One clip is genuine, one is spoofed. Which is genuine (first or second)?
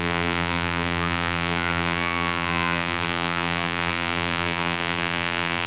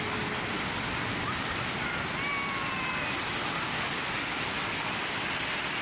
second